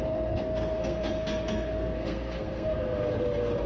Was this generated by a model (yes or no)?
yes